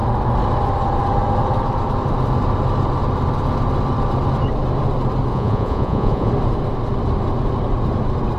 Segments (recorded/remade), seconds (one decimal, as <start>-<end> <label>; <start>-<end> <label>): 0.0-5.3 recorded; 5.3-6.3 remade; 6.3-8.4 recorded